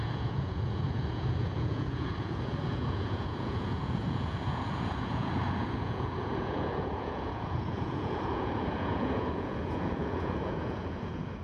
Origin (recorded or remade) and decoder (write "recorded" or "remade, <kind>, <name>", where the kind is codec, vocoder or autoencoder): remade, vocoder, Vocos